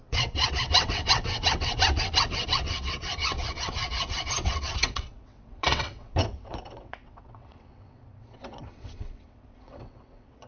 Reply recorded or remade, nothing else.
remade